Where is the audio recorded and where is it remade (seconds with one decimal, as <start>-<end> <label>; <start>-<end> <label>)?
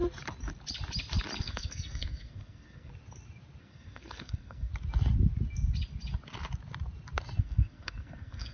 0.0-1.4 recorded; 1.4-2.9 remade; 2.9-3.6 recorded; 3.6-4.7 remade; 4.7-7.4 recorded; 7.4-8.5 remade